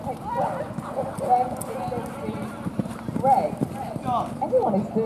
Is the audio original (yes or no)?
yes